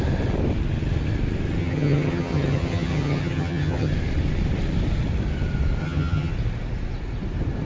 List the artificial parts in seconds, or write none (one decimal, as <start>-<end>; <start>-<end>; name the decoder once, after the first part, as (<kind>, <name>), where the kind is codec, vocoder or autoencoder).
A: 1.6-3.9 (vocoder, HiFi-GAN); 5.8-6.3